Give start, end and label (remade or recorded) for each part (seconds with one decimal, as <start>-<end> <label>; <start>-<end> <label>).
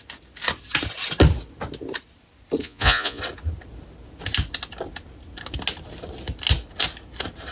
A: 0.0-2.6 recorded; 2.6-3.2 remade; 3.2-7.5 recorded